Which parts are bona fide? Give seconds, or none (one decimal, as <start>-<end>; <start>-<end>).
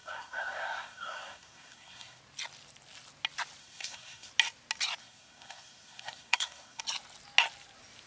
2.2-3.6; 4.3-5.0; 6.8-8.1